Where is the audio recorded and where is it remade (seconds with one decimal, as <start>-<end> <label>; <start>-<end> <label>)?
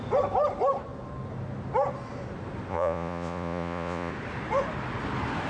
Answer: 0.0-2.7 recorded; 2.7-4.1 remade; 4.1-5.5 recorded